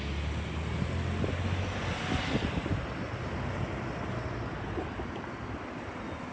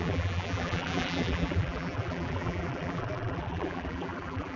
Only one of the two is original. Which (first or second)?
first